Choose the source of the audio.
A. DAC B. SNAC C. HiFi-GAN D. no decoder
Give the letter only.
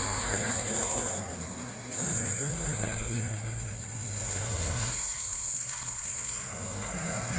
B